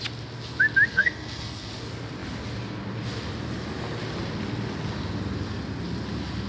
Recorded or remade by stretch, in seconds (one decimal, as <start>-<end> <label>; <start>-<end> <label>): 0.0-0.9 recorded; 0.9-1.7 remade; 1.7-6.5 recorded